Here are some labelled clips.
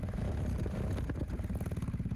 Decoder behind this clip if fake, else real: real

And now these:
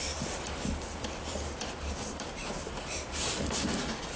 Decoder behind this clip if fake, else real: real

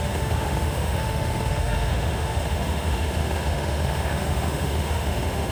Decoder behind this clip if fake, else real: fake, autoencoder, DAC-VAE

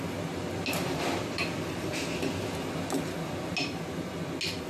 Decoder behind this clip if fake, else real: real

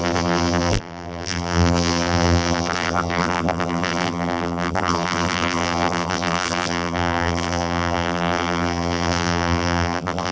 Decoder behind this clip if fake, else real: fake, vocoder, BigVGAN v2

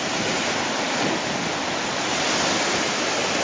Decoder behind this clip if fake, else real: real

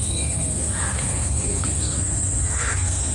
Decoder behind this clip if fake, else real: fake, codec, SNAC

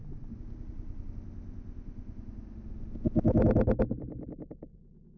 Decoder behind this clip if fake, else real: real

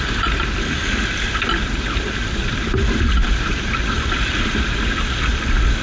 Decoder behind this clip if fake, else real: real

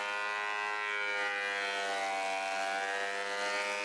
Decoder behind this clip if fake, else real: real